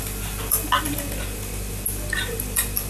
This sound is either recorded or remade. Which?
recorded